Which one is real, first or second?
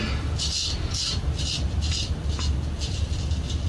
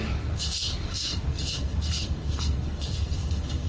first